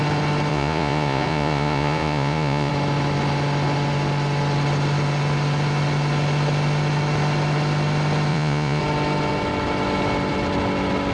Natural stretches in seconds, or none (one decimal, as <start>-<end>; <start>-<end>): 0.0-0.5; 2.7-8.3; 8.8-11.1